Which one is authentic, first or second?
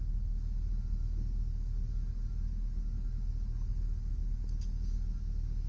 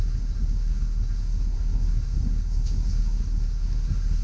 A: first